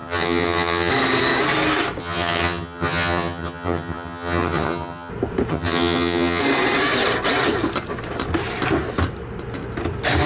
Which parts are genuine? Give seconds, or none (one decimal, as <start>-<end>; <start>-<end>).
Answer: 0.9-2.0; 5.1-5.5; 6.4-10.3